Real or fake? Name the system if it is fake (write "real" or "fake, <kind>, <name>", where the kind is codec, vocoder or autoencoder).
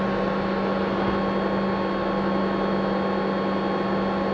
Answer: real